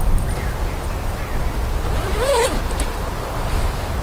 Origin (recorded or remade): recorded